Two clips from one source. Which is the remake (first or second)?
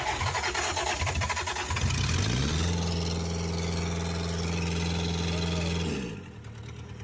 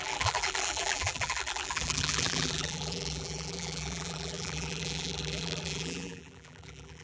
second